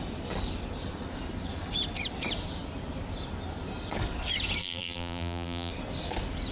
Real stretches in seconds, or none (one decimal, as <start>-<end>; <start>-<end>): 0.0-4.6; 5.7-6.5